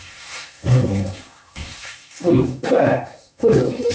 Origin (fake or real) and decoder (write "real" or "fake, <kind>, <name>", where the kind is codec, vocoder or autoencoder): fake, codec, SNAC